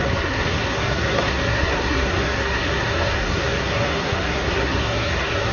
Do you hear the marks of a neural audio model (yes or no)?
yes